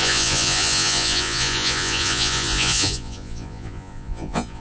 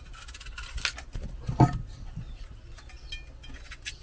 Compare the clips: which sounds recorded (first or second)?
second